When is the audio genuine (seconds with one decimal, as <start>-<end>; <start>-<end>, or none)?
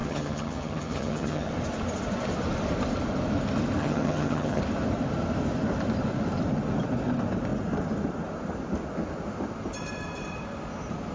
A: 1.5-3.8; 4.6-11.1